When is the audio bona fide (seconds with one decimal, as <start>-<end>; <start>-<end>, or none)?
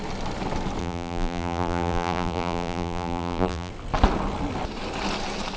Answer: 0.0-0.8; 3.7-5.6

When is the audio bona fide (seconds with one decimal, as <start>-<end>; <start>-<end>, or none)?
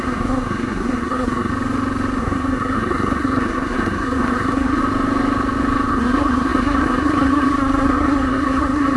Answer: 1.5-2.2; 4.8-5.9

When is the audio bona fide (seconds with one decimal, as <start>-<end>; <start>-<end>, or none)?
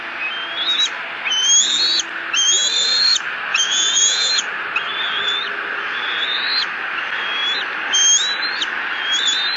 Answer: 0.0-3.5; 4.3-9.6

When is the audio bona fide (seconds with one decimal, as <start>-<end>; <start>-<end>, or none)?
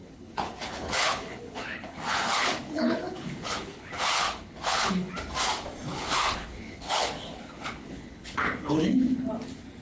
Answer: 5.1-5.9; 9.3-9.8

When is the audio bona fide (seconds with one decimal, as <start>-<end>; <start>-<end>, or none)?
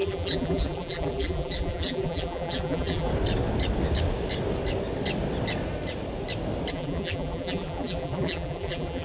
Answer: 3.1-6.7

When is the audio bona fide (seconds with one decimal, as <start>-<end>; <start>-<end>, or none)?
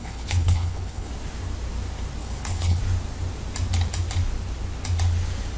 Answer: 1.1-2.2; 2.8-5.6